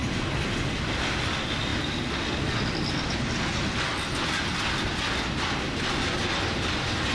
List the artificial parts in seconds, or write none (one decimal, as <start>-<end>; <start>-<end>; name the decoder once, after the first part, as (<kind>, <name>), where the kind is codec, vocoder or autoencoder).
none